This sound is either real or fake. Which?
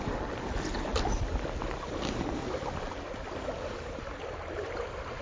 real